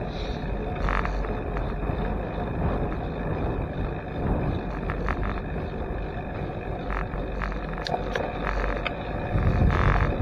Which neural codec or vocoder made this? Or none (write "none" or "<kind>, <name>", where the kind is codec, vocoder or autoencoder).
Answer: none